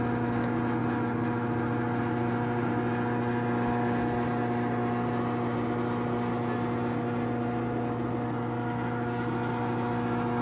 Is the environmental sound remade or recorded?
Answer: recorded